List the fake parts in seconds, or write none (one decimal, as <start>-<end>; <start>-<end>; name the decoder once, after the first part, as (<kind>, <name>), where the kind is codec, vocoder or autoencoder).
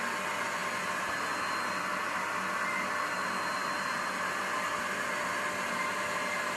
none